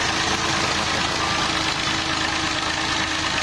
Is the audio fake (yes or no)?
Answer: no